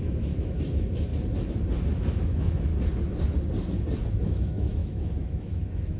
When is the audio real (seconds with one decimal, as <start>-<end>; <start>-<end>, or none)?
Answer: 1.1-2.0; 2.7-4.1